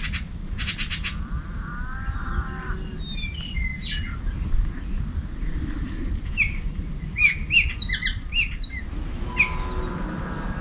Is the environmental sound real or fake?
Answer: real